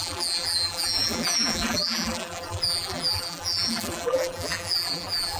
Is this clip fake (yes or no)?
yes